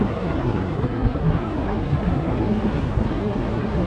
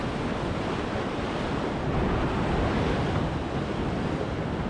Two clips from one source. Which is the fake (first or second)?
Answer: first